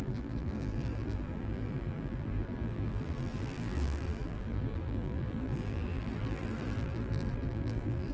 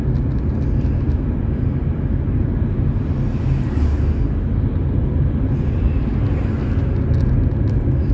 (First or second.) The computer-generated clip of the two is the first